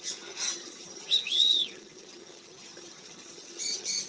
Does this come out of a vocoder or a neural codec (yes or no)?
yes